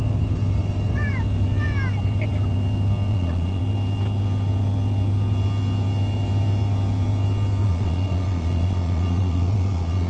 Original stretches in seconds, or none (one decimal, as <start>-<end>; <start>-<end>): 0.0-3.1; 3.6-7.6